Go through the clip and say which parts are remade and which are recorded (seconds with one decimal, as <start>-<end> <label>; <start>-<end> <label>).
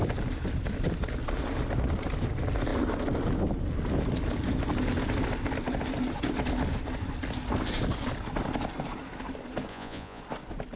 0.0-9.7 recorded; 9.7-10.2 remade; 10.2-10.8 recorded